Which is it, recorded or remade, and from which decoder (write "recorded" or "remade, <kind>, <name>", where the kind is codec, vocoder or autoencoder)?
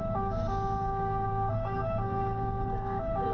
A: remade, codec, DAC